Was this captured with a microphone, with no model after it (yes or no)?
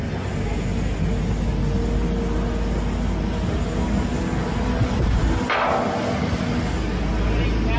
yes